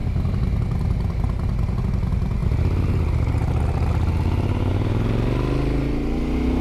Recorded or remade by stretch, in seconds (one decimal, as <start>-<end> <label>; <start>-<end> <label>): 0.0-6.6 recorded